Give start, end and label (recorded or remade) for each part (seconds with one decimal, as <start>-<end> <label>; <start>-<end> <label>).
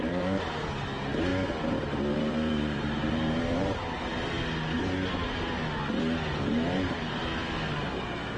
0.0-1.3 remade; 1.3-2.1 recorded; 2.1-4.1 remade; 4.1-6.3 recorded; 6.3-7.3 remade; 7.3-8.0 recorded; 8.0-8.4 remade